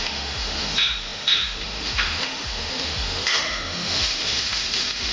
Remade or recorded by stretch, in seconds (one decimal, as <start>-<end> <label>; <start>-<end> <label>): 0.0-5.1 remade